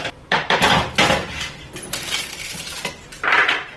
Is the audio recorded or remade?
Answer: recorded